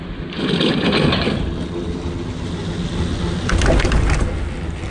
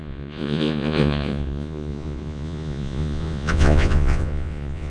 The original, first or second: first